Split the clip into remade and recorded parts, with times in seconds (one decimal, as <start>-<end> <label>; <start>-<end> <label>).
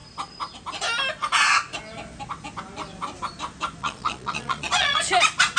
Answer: 0.0-3.8 recorded; 3.8-5.0 remade; 5.0-5.6 recorded